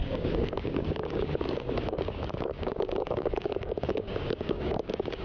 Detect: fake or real fake